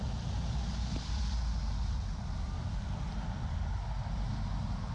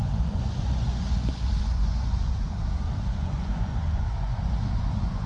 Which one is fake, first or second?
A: second